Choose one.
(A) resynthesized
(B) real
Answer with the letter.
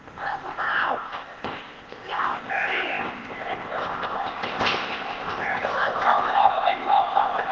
A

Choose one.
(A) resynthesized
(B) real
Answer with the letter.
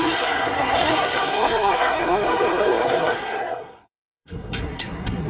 A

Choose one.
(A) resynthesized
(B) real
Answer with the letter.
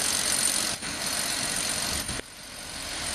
A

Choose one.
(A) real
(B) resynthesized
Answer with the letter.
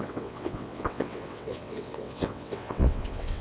B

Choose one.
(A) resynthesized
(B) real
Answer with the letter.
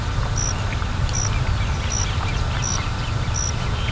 B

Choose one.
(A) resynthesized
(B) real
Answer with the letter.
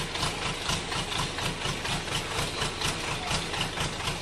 B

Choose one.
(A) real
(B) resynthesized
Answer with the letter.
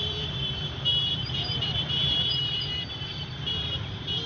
B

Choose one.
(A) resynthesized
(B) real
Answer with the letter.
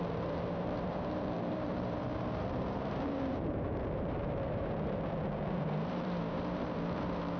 A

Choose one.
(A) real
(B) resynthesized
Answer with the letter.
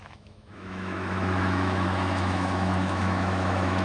B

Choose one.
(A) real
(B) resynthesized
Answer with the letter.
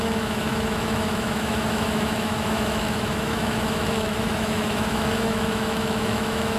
B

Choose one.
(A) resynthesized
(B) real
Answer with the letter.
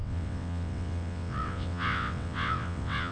A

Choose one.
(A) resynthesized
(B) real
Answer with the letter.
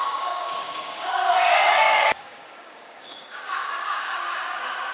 A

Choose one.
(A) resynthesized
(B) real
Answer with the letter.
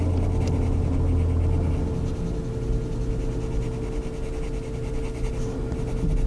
B